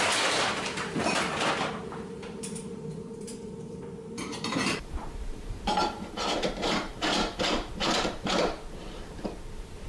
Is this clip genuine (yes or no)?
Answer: no